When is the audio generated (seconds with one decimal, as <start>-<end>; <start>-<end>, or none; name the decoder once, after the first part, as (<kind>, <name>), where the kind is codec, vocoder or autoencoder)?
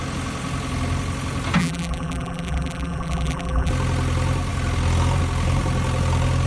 1.6-3.7 (vocoder, BigVGAN v2)